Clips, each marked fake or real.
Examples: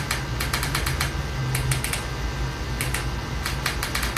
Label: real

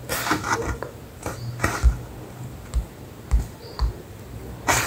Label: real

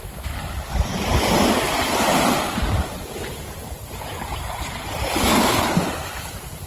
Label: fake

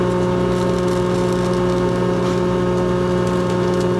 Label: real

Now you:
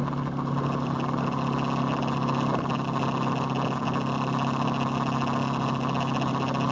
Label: real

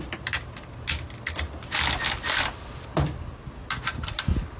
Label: real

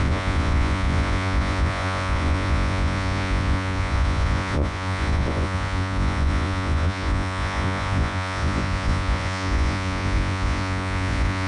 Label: fake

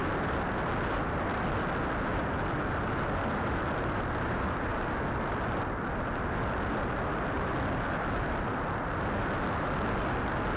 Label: real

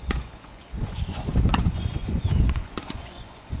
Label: fake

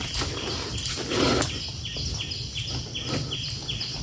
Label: real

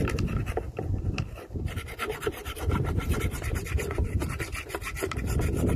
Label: fake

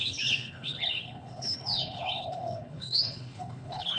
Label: fake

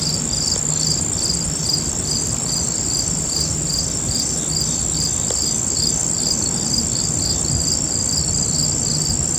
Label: real